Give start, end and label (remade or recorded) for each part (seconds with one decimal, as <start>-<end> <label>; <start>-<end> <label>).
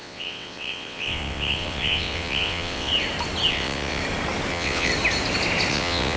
0.0-2.9 remade; 2.9-3.5 recorded; 3.5-4.0 remade; 4.0-4.5 recorded; 4.5-4.9 remade; 4.9-5.7 recorded; 5.7-6.2 remade